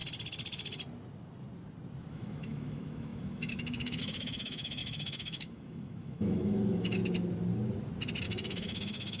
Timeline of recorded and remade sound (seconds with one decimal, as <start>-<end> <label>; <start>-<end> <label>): 0.0-2.1 recorded; 2.1-7.0 remade; 7.0-8.2 recorded; 8.2-9.2 remade